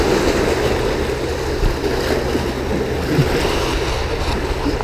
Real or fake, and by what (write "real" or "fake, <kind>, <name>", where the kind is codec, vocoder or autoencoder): real